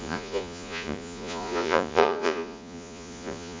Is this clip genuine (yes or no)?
no